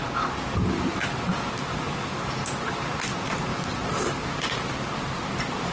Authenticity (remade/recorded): recorded